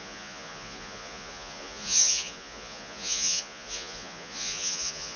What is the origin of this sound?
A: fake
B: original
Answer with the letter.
A